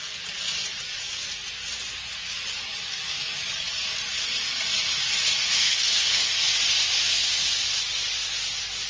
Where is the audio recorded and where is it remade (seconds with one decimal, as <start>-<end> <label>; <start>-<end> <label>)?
0.0-5.6 recorded; 5.6-6.3 remade; 6.3-8.9 recorded

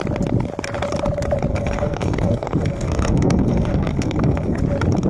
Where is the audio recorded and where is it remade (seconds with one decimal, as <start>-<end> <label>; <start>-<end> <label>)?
0.0-1.5 recorded; 1.5-4.6 remade; 4.6-5.1 recorded

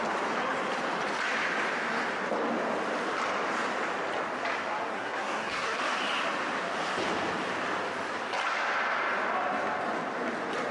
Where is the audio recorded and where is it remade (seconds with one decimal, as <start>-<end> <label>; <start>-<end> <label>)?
0.0-4.9 recorded; 4.9-5.8 remade; 5.8-10.7 recorded

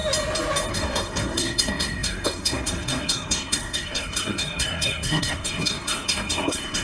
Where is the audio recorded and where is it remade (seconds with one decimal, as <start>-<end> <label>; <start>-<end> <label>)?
0.0-0.7 recorded; 0.7-6.8 remade

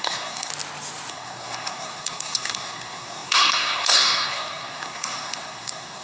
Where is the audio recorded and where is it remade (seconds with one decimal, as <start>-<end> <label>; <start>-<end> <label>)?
0.0-0.5 remade; 0.5-1.1 recorded; 1.1-6.0 remade